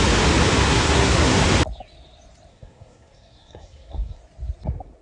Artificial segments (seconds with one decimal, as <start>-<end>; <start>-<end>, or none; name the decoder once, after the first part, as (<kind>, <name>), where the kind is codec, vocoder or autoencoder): 0.6-1.4 (codec, SNAC); 2.5-4.2